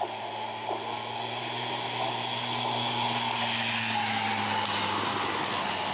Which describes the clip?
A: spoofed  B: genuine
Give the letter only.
B